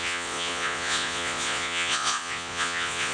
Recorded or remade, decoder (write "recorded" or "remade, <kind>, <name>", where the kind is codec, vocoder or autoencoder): remade, vocoder, Vocos